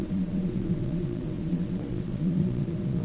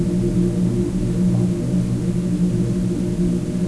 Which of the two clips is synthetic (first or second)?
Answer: first